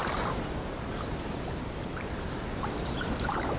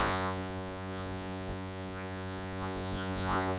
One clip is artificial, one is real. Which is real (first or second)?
first